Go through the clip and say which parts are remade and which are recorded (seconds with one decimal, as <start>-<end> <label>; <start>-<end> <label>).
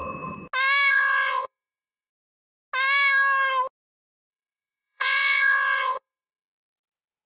0.0-0.9 recorded; 0.9-2.1 remade; 2.1-4.3 recorded; 4.3-7.3 remade